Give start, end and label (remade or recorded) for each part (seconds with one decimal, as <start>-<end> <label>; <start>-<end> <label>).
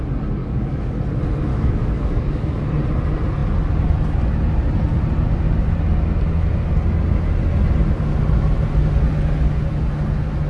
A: 0.0-0.4 recorded; 0.4-1.0 remade; 1.0-1.5 recorded; 1.5-2.7 remade; 2.7-10.5 recorded